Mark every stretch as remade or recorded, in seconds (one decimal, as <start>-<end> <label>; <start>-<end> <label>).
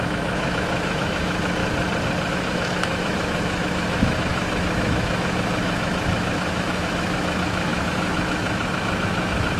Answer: 0.0-1.6 remade; 1.6-2.3 recorded; 2.3-9.6 remade